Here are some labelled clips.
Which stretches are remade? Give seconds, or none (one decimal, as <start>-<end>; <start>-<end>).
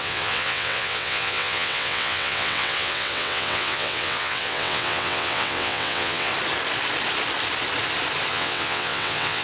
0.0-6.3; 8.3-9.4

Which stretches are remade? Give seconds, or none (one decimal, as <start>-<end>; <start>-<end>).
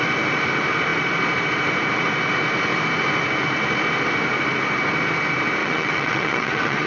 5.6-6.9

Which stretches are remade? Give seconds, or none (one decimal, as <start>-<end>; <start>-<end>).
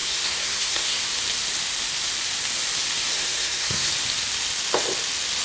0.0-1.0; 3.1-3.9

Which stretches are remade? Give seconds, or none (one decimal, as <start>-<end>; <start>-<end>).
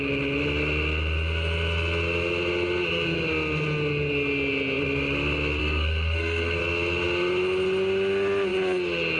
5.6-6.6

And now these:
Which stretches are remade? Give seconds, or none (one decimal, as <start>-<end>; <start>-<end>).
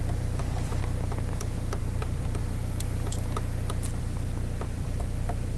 0.0-0.8; 1.8-2.4; 4.0-5.6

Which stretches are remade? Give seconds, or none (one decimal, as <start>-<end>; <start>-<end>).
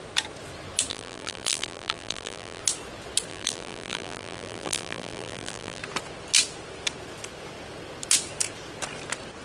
0.9-2.6; 3.3-5.8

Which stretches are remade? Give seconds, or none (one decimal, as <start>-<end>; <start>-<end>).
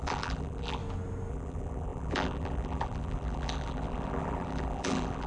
0.0-0.8; 1.3-5.3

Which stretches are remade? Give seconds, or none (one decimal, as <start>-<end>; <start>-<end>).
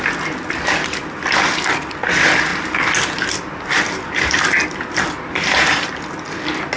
2.5-4.4